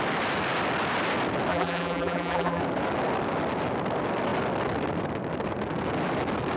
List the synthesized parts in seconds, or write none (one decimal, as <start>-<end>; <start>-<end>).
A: 1.5-2.6